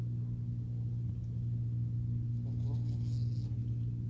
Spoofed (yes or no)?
no